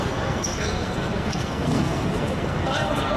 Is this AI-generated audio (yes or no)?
yes